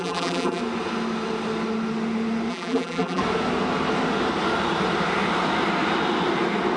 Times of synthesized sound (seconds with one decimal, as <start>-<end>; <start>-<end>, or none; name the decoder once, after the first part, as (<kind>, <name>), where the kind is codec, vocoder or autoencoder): 0.0-0.6 (vocoder, BigVGAN v2); 2.5-3.2